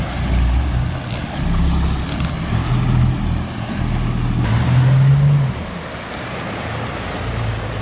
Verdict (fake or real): real